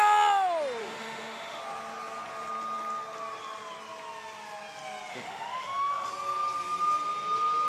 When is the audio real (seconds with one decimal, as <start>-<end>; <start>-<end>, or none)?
0.0-0.8; 1.6-5.1; 6.1-7.7